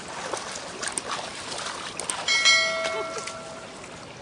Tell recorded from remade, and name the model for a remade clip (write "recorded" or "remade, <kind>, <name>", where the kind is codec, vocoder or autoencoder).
recorded